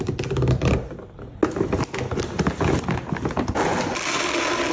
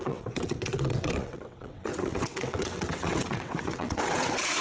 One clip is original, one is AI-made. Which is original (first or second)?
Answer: first